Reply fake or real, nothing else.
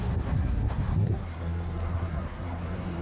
fake